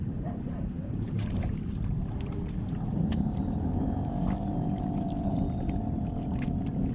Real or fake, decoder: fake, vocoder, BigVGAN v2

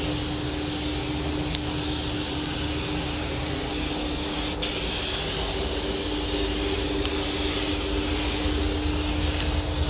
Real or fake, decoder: real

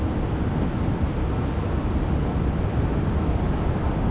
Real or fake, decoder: real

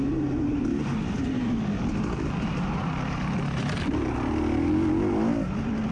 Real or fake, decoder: real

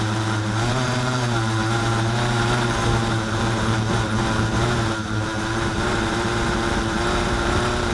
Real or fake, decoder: fake, vocoder, BigVGAN v2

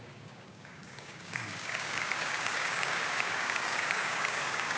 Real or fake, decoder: fake, codec, DAC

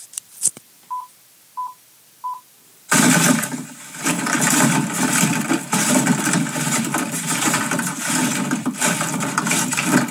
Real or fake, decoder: fake, vocoder, BigVGAN v2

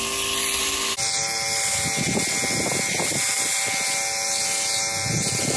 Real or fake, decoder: real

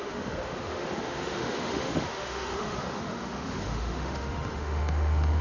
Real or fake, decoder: fake, autoencoder, DAC-VAE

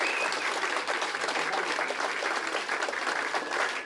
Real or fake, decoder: real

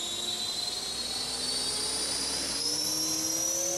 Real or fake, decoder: real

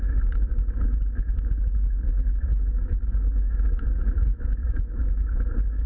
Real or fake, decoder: fake, autoencoder, DAC-VAE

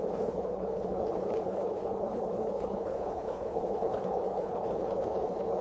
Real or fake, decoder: fake, codec, HILCodec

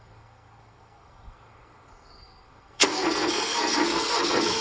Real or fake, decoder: fake, codec, SNAC